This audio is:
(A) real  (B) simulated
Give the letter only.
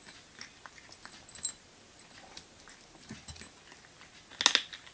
A